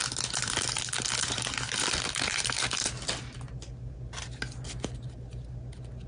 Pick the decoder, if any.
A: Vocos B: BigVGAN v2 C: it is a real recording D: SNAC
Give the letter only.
C